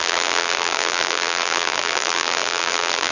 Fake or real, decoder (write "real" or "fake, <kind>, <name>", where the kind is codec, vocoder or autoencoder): fake, vocoder, BigVGAN v2